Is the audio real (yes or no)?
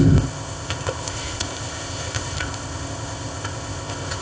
no